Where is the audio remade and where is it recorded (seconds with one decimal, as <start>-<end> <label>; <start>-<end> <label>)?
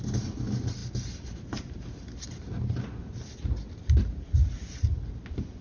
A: 0.0-5.6 recorded